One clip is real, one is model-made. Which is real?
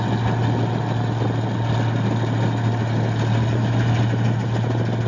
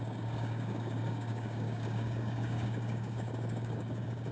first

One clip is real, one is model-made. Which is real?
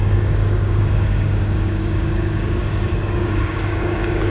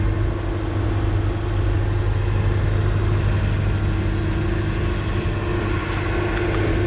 second